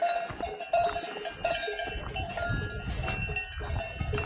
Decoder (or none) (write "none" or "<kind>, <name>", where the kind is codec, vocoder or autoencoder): none